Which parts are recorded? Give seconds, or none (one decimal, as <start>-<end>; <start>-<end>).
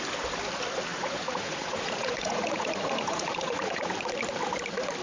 0.0-0.9; 3.9-5.0